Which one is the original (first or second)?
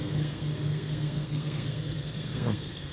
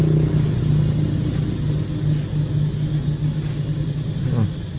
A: second